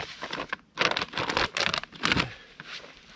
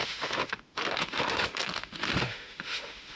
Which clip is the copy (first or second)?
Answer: second